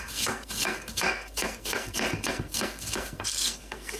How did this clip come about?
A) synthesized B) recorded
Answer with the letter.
A